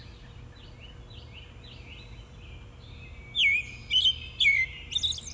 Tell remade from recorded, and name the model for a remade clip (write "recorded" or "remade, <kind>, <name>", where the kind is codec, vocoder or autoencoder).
recorded